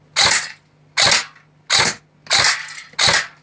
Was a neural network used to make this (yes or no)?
no